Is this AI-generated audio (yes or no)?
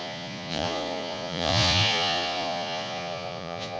yes